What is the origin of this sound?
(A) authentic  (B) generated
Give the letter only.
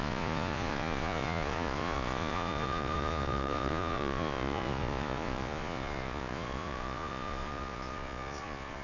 B